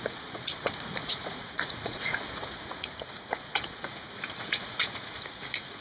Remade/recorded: remade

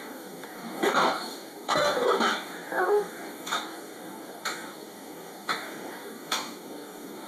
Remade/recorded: remade